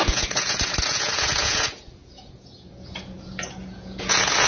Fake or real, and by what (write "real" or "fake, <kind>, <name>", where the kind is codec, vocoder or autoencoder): fake, vocoder, Vocos